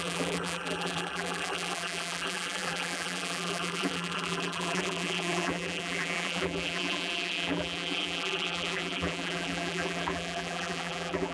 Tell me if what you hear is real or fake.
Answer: fake